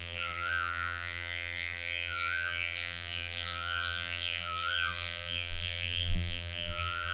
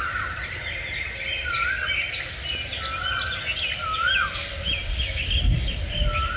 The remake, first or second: first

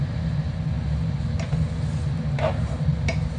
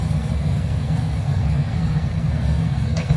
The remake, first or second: second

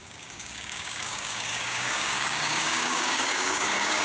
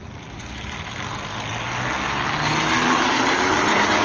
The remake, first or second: first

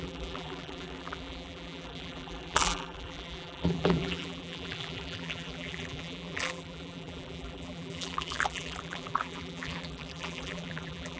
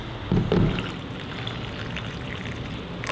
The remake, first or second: first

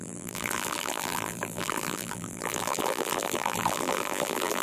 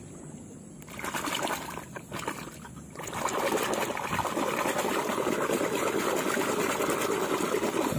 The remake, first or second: first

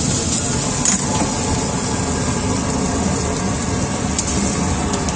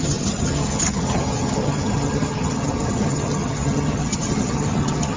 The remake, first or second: second